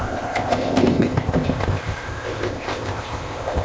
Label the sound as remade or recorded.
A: remade